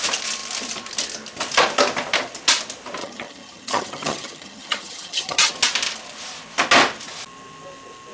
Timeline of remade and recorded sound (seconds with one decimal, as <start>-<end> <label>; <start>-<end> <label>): 0.0-3.0 recorded; 3.0-5.5 remade; 5.5-8.1 recorded